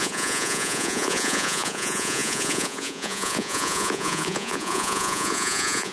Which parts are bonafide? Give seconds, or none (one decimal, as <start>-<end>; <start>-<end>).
none